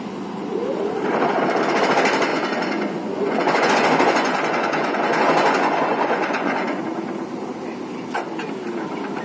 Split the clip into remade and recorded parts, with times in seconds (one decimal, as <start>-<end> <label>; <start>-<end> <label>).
0.0-2.3 recorded; 2.3-6.8 remade; 6.8-9.2 recorded